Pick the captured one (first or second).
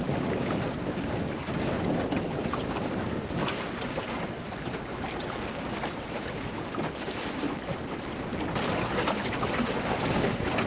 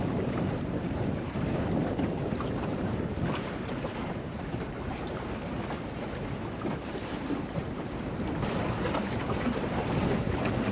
first